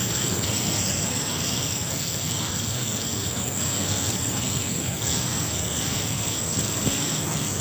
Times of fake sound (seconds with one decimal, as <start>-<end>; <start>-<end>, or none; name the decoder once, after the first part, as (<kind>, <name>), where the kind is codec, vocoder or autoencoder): 0.0-7.6 (codec, SNAC)